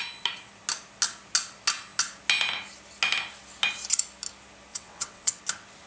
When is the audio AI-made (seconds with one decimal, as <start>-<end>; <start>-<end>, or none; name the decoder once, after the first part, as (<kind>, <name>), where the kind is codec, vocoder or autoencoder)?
4.7-5.4 (vocoder, WaveNeXt)